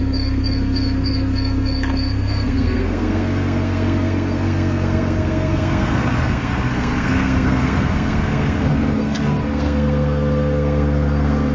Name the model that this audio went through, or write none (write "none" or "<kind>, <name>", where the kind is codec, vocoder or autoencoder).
codec, SNAC